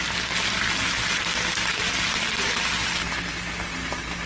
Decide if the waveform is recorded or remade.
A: recorded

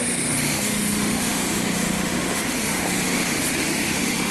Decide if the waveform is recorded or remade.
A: remade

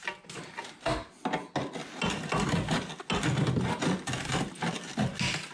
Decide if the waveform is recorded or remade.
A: recorded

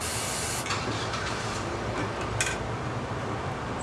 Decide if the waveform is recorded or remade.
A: recorded